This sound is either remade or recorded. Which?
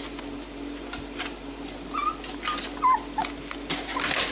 recorded